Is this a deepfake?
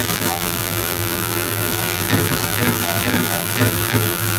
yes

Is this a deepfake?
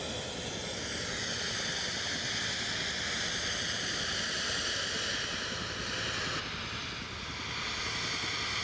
no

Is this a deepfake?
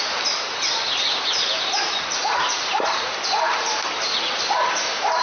yes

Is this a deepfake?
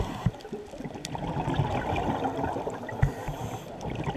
yes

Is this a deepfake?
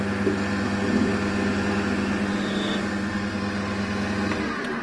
no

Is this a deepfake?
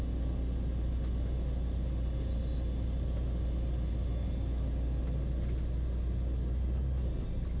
no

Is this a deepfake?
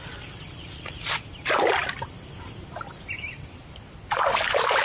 yes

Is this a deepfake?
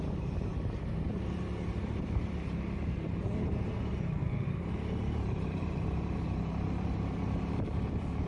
yes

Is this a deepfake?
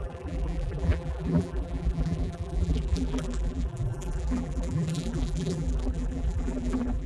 yes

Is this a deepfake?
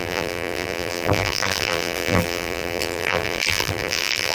yes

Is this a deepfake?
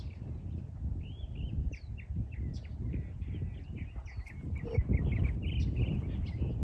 no